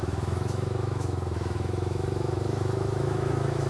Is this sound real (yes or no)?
no